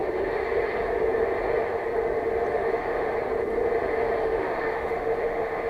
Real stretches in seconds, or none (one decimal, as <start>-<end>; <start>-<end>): 0.0-2.5; 3.1-4.2